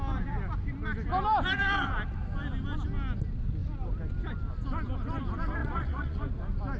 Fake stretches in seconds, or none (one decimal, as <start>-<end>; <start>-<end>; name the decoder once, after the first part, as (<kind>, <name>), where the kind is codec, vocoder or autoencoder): 5.6-6.2 (vocoder, Vocos)